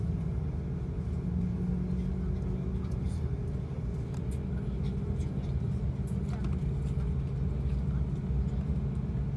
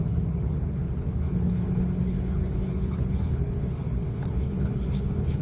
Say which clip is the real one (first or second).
first